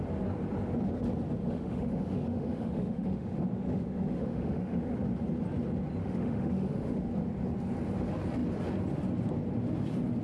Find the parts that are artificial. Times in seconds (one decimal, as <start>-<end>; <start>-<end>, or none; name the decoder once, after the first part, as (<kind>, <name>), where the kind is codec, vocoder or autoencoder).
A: 1.4-4.9 (autoencoder, DAC-VAE); 6.0-7.1